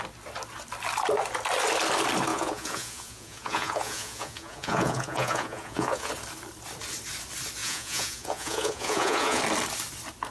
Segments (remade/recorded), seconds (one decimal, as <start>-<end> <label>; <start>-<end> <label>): 0.0-2.3 recorded; 2.3-6.1 remade; 6.1-7.6 recorded; 7.6-9.4 remade; 9.4-10.3 recorded